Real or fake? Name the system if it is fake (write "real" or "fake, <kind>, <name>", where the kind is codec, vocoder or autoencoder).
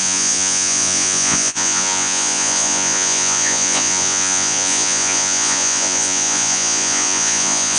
fake, vocoder, Vocos